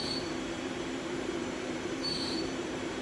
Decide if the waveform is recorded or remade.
remade